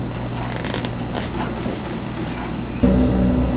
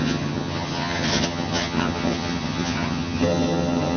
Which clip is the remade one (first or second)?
second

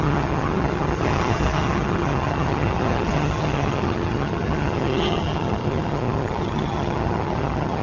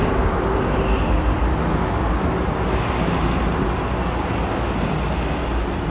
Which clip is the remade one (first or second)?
first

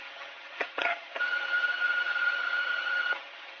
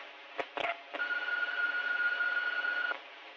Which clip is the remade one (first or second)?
first